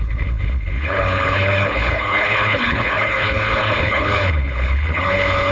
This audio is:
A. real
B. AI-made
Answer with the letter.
B